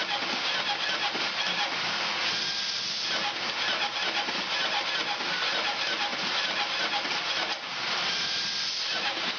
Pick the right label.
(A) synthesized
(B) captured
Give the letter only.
B